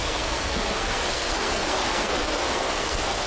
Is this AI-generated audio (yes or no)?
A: yes